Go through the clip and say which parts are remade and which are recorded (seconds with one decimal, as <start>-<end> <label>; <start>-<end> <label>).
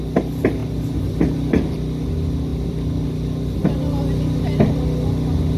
0.0-5.6 recorded